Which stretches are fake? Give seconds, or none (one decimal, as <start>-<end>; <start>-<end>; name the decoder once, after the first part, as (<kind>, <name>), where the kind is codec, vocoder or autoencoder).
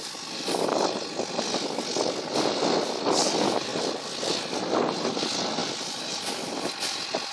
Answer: 5.6-6.2 (vocoder, BigVGAN v2)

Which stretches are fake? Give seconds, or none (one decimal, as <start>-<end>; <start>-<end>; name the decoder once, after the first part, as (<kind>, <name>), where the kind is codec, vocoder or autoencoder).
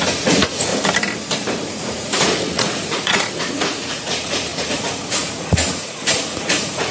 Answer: 0.0-0.7 (vocoder, Vocos); 1.7-6.9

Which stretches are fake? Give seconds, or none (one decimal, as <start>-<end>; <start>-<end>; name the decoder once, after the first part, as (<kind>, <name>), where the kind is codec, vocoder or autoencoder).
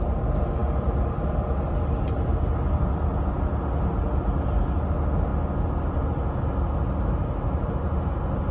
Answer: none